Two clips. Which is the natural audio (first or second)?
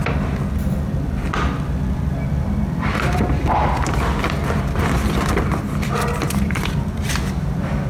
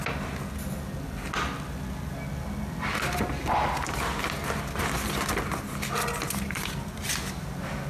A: second